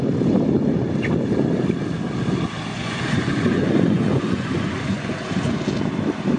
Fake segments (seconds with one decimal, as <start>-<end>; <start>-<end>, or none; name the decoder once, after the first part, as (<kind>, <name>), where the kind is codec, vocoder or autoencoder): 2.7-5.6 (vocoder, Vocos)